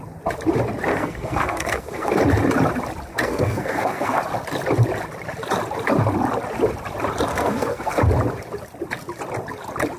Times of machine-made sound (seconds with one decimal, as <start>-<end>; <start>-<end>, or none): 0.9-2.1; 3.1-4.2; 7.3-8.0